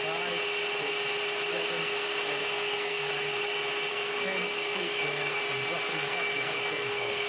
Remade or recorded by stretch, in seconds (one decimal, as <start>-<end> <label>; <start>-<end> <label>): 0.0-1.5 recorded; 1.5-3.1 remade; 3.1-3.9 recorded; 3.9-5.4 remade; 5.4-5.9 recorded; 5.9-7.3 remade